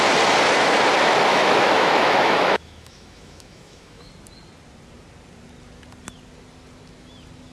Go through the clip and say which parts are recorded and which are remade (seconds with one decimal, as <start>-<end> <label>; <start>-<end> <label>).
0.0-1.3 recorded; 1.3-4.1 remade; 4.1-7.5 recorded